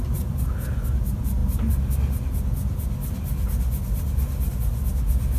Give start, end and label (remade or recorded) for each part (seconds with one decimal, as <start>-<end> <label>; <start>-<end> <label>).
0.0-5.4 recorded